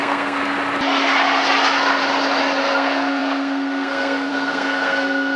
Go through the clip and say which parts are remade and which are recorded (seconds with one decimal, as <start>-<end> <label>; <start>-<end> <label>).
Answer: 0.0-0.4 remade; 0.4-2.6 recorded; 2.6-5.4 remade